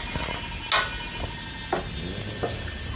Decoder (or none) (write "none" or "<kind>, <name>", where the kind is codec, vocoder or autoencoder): none